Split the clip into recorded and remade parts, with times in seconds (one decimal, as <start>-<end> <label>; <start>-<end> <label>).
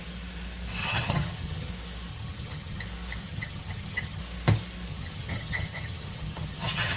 0.0-0.8 recorded; 0.8-1.7 remade; 1.7-2.1 recorded; 2.1-2.8 remade; 2.8-3.2 recorded; 3.2-4.2 remade; 4.2-4.9 recorded; 4.9-7.0 remade